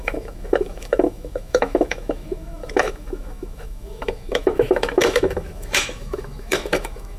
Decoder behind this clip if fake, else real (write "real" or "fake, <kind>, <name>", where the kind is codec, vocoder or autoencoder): fake, autoencoder, DAC-VAE